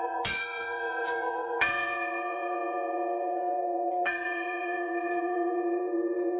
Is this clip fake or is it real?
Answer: fake